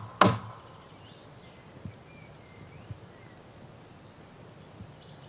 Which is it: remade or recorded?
recorded